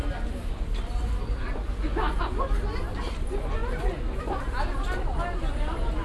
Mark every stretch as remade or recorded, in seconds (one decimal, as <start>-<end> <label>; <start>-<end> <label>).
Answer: 0.0-6.0 recorded